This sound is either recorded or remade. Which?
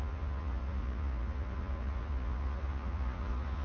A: remade